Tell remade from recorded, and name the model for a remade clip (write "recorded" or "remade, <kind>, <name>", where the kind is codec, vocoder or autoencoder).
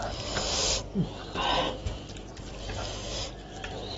recorded